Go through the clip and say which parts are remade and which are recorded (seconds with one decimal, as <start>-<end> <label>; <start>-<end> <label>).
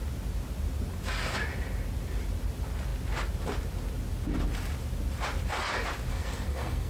0.0-6.1 recorded; 6.1-6.9 remade